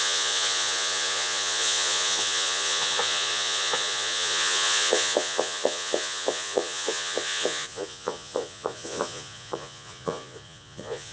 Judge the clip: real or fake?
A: fake